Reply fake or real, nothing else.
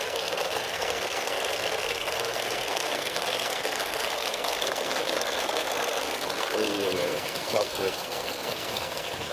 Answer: fake